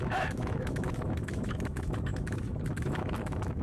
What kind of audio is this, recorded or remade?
remade